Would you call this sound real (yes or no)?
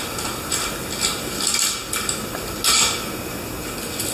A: yes